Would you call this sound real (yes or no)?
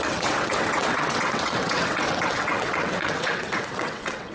no